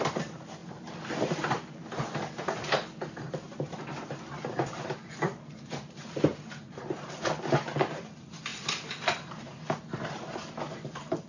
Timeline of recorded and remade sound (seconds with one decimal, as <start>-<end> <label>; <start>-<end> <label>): 0.0-11.3 recorded